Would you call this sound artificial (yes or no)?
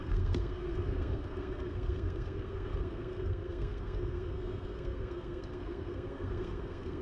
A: yes